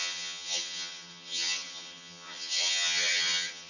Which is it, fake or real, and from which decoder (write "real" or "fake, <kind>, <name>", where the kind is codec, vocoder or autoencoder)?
fake, vocoder, HiFi-GAN